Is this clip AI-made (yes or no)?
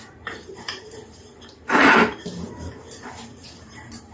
yes